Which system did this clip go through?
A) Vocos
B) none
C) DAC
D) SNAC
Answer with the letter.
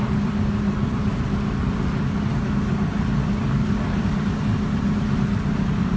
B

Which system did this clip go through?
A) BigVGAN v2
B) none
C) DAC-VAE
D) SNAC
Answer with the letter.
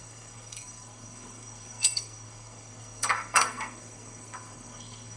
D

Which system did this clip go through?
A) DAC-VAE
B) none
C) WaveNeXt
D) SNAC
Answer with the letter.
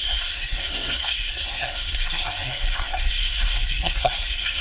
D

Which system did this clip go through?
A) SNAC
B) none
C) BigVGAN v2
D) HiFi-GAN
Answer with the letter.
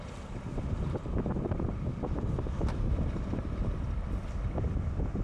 B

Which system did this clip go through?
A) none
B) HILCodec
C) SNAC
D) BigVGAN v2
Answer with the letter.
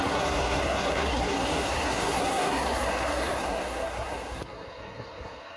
C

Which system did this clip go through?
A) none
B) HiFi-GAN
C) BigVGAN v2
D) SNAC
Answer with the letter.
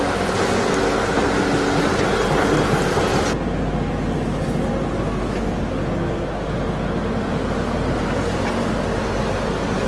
A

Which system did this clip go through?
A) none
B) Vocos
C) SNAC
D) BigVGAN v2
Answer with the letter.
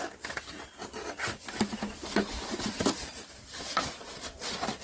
A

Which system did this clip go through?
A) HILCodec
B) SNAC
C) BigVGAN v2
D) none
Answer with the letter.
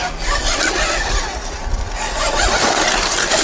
D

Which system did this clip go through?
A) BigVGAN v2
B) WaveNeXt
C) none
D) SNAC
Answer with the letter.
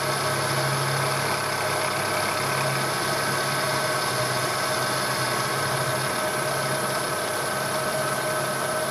C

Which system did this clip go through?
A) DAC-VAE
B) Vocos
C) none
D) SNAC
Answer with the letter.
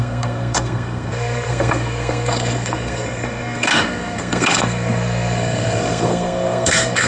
D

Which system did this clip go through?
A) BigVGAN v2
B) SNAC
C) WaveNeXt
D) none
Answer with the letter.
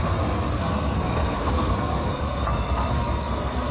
B